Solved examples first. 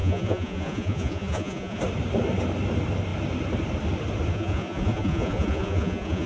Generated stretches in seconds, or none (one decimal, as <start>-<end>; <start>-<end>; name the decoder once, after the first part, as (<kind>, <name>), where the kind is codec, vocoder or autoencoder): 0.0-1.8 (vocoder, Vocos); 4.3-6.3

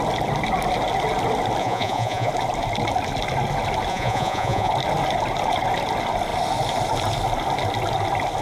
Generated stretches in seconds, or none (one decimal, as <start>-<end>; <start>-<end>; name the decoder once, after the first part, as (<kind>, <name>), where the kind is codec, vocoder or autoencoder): 1.6-2.3 (vocoder, Vocos); 3.9-4.7

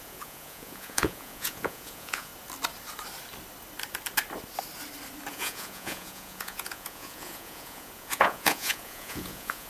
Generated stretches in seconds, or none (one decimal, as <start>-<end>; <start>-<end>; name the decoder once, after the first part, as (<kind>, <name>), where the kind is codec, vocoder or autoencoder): 0.0-2.3 (vocoder, Vocos); 5.3-9.7

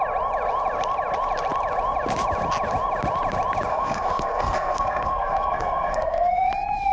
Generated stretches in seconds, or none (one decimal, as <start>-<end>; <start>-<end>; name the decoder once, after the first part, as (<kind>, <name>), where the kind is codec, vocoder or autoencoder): 3.7-6.5 (codec, SNAC)

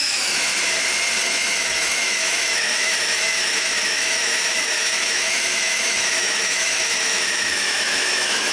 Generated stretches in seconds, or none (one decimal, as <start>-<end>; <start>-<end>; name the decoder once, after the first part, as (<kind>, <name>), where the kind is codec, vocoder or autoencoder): 0.0-0.5 (autoencoder, DAC-VAE); 1.2-8.5

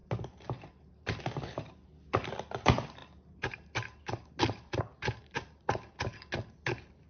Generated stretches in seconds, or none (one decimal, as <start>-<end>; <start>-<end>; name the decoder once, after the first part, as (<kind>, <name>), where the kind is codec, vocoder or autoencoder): none